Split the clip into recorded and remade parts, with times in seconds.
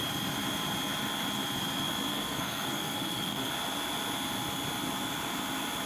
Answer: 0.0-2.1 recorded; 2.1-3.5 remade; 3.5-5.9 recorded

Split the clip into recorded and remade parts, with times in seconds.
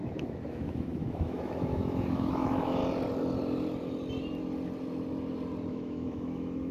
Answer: 0.0-2.8 remade; 2.8-5.7 recorded; 5.7-6.7 remade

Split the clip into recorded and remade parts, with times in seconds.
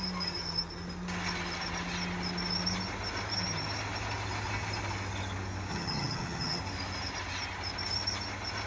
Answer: 0.0-5.7 recorded; 5.7-6.6 remade; 6.6-8.7 recorded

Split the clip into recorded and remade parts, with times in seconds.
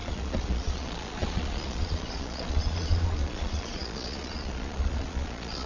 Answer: 0.0-5.7 remade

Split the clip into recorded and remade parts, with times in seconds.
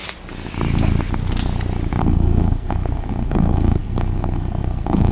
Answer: 0.0-2.0 recorded; 2.0-5.1 remade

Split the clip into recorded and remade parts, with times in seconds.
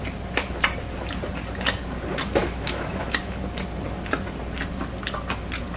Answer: 0.0-2.4 recorded; 2.4-3.4 remade; 3.4-5.8 recorded